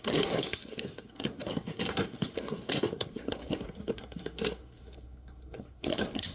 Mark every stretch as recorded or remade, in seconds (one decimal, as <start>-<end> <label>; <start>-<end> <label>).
0.0-6.3 remade